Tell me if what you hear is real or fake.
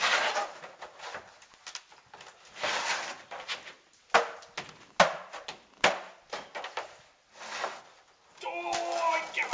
real